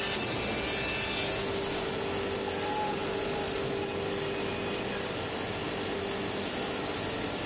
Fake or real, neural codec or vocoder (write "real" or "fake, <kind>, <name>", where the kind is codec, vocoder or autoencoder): real